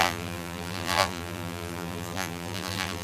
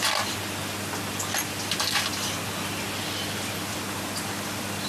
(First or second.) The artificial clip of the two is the first